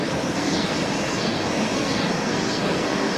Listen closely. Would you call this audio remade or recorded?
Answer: remade